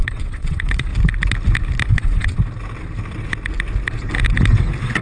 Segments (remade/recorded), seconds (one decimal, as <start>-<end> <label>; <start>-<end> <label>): 0.0-0.9 remade; 0.9-1.9 recorded; 1.9-2.4 remade; 2.4-5.0 recorded